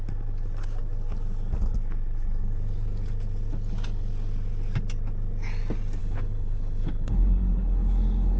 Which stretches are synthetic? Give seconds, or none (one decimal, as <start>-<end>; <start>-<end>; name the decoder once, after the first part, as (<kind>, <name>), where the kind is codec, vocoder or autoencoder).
6.0-8.4 (codec, HILCodec)